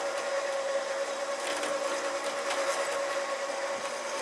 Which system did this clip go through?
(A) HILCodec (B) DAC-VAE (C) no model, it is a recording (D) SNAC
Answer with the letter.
C